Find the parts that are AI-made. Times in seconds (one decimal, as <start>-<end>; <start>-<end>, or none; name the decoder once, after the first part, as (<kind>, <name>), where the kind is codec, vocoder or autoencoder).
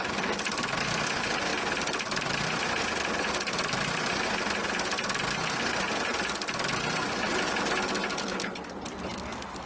none